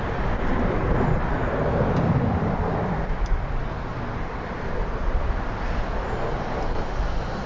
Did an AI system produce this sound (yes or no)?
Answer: no